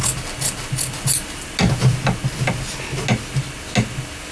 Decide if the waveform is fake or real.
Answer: real